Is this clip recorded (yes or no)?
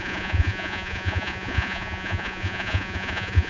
no